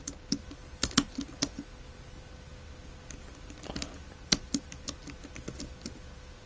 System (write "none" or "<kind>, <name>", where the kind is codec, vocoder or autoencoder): none